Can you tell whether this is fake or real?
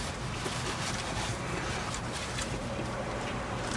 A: fake